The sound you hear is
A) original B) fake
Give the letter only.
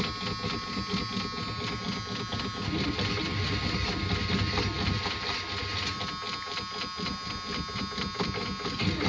A